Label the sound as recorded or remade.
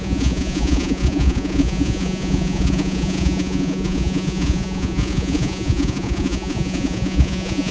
remade